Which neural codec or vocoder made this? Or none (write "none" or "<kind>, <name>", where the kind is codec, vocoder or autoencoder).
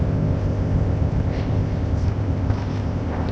codec, ZipCodec